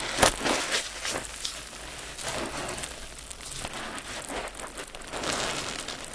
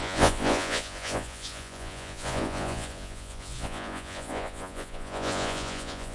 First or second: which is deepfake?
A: second